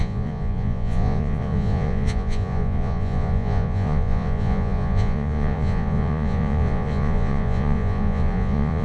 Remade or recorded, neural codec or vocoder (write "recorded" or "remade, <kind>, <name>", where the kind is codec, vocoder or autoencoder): remade, vocoder, Vocos